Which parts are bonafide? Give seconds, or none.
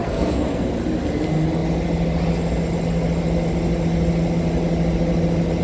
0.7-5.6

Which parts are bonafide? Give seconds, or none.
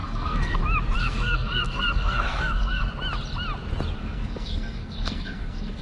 0.6-1.0; 2.9-4.0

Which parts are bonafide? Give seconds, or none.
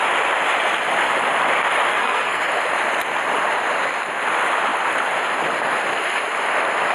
0.0-1.9; 2.4-6.9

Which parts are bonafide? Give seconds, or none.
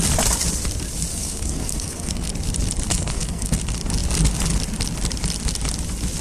0.0-1.1; 2.3-2.9; 3.6-6.2